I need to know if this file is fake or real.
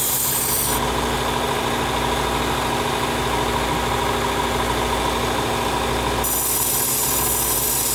real